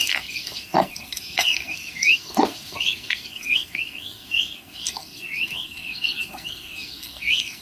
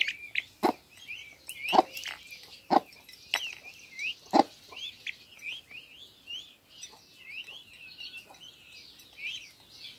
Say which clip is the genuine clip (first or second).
second